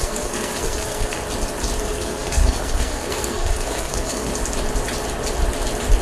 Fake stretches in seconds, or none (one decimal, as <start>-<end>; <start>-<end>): 0.0-1.2; 1.8-4.3